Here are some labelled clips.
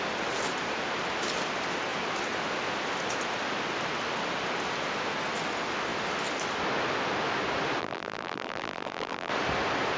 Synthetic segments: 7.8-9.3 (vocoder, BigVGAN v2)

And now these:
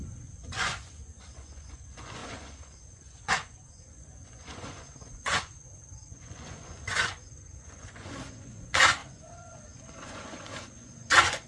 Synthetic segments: 0.0-11.5 (vocoder, Vocos)

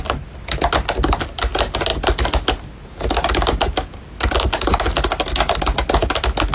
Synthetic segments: none

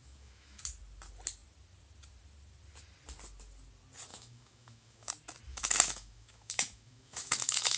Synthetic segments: 0.0-0.6 (autoencoder, DAC-VAE); 4.1-5.1; 5.5-7.8

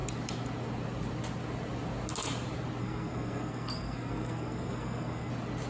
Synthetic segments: 2.8-5.3 (codec, SNAC)